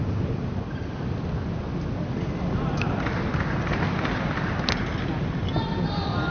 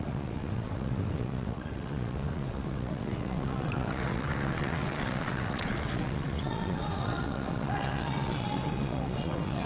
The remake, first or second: second